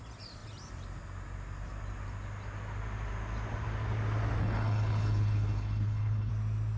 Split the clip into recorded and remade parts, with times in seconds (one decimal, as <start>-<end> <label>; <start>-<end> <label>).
0.0-4.4 recorded; 4.4-6.3 remade; 6.3-6.8 recorded